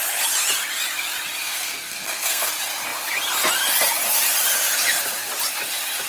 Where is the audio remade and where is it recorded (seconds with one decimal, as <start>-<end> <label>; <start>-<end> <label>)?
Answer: 0.0-1.4 recorded; 1.4-2.5 remade; 2.5-6.1 recorded